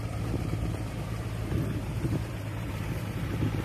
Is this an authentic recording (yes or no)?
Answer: no